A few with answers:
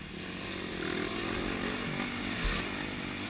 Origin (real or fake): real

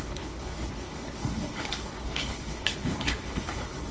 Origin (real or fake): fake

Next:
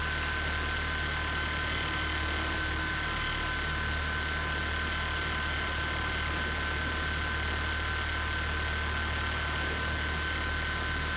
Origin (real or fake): real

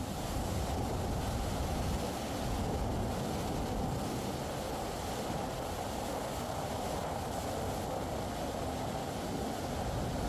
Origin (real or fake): real